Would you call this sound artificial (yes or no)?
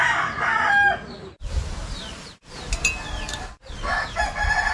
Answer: no